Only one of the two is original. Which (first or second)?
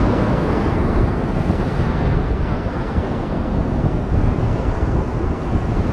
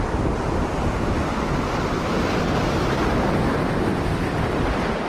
second